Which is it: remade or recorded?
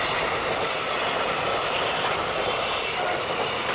remade